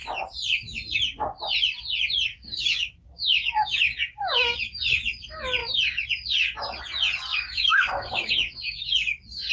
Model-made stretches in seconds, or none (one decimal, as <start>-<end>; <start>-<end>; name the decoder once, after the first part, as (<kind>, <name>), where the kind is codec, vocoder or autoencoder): 2.3-4.6 (codec, DAC); 7.3-8.9

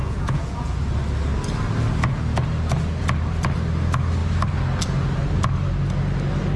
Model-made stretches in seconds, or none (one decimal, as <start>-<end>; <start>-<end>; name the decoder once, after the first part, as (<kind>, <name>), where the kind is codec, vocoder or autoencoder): 0.0-0.8 (vocoder, Vocos)

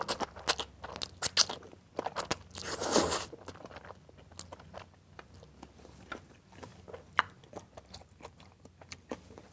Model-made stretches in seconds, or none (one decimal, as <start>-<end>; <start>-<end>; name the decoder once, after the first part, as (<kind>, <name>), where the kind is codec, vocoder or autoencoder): none

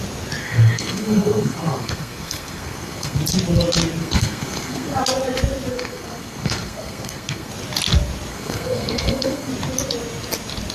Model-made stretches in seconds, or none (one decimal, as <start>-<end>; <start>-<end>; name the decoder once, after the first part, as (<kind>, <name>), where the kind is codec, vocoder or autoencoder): 0.4-3.2 (codec, SNAC); 4.0-5.0; 5.7-7.5; 8.3-9.5